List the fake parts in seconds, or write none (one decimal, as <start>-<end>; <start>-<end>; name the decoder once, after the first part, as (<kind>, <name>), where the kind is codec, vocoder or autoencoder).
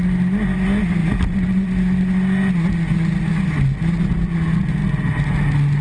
none